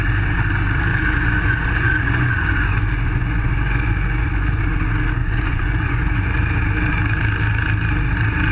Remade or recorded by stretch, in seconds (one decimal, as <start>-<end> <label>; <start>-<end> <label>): 0.0-0.9 recorded; 0.9-4.6 remade; 4.6-5.2 recorded; 5.2-6.4 remade; 6.4-8.5 recorded